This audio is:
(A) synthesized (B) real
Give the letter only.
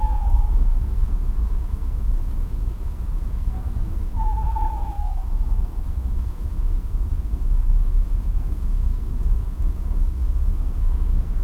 A